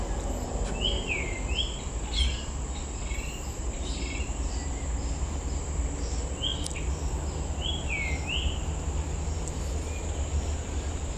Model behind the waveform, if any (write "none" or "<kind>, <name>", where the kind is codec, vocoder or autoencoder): none